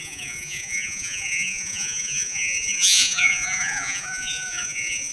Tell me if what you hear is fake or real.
fake